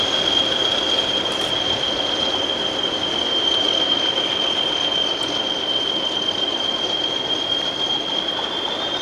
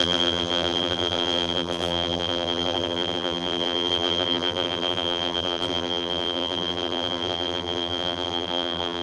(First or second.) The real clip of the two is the first